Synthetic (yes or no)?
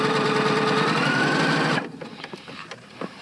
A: yes